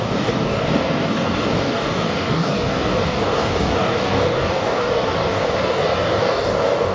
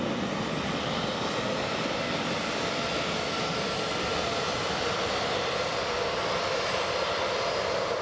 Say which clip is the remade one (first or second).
first